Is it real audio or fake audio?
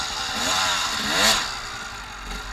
real